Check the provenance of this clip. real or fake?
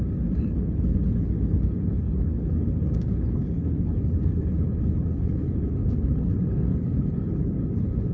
fake